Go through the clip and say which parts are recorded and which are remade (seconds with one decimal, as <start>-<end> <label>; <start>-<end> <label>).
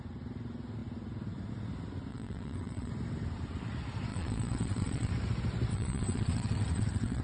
0.0-2.1 recorded; 2.1-2.9 remade; 2.9-4.1 recorded; 4.1-5.1 remade; 5.1-5.7 recorded; 5.7-7.2 remade